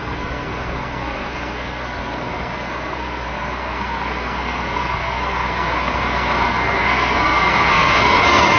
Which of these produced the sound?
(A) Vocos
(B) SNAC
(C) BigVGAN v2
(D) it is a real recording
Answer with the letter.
B